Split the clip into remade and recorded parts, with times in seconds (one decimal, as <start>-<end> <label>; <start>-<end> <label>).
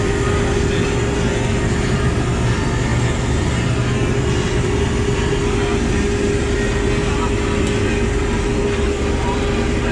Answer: 0.0-9.9 recorded